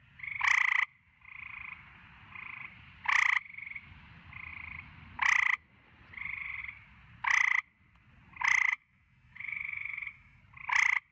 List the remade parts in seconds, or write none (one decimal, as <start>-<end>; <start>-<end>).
8.7-10.4

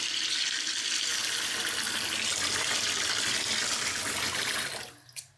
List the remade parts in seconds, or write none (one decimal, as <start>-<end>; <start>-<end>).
none

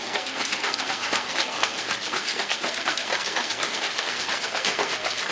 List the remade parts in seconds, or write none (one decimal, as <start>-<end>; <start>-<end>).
0.0-5.3

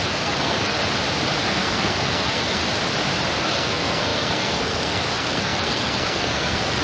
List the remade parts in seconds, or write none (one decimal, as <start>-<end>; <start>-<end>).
0.0-0.8; 1.5-2.6; 3.4-6.8

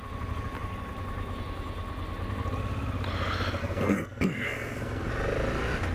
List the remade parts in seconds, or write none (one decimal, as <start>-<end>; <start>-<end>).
3.6-5.1

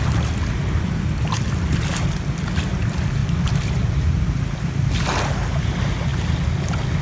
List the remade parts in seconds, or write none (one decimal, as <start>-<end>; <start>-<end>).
none

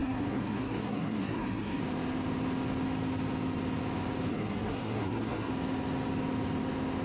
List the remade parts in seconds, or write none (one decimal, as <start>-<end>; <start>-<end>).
0.0-1.8; 4.3-5.5

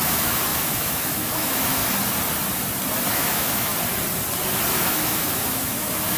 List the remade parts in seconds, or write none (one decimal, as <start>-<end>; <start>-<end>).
0.0-1.8; 3.1-3.7; 4.7-6.2